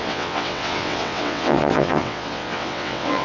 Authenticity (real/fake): fake